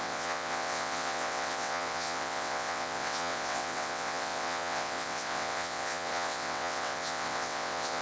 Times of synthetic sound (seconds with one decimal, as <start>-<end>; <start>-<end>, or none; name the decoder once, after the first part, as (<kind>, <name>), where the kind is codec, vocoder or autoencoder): 0.0-8.0 (vocoder, WaveNeXt)

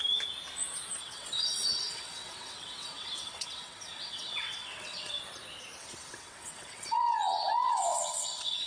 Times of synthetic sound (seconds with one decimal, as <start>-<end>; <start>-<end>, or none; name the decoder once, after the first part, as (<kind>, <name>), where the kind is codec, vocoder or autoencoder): 1.0-5.2 (vocoder, WaveNeXt); 5.8-8.7

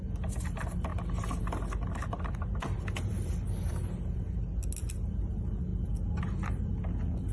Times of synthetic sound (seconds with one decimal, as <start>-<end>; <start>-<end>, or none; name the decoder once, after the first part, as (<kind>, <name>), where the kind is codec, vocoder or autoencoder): none

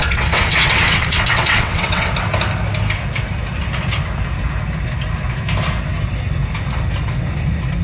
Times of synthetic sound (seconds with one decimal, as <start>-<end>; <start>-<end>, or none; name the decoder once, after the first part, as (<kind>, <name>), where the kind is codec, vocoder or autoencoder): 0.0-2.1 (vocoder, WaveNeXt)

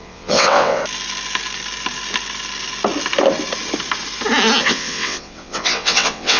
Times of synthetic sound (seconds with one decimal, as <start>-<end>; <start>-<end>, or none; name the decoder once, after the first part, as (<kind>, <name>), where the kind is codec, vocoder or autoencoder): 0.0-0.8 (vocoder, WaveNeXt); 4.6-6.4

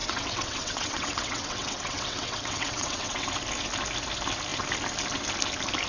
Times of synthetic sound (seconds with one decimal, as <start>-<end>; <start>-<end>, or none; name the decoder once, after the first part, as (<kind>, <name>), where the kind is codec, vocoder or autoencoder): 0.0-3.3 (vocoder, WaveNeXt)

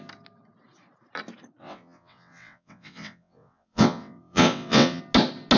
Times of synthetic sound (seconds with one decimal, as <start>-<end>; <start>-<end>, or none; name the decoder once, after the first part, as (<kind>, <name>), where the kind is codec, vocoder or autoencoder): 1.6-5.0 (vocoder, WaveNeXt)

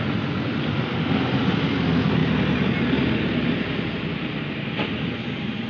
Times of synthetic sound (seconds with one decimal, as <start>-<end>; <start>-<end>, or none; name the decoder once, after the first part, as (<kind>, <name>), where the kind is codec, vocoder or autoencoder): none